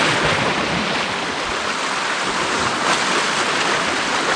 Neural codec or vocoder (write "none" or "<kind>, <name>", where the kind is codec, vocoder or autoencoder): none